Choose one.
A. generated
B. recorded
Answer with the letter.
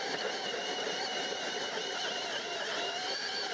A